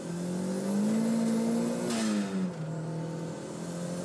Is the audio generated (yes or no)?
no